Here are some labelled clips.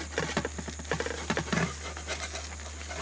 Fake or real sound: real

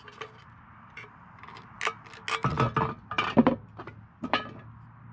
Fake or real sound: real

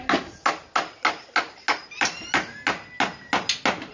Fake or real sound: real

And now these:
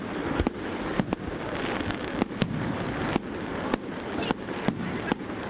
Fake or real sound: real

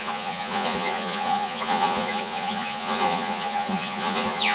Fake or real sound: fake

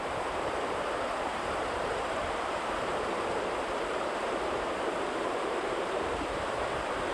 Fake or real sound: fake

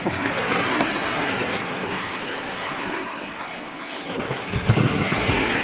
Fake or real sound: fake